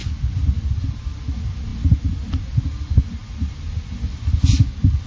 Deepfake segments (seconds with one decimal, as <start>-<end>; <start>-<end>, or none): none